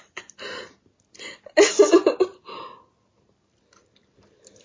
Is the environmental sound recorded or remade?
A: recorded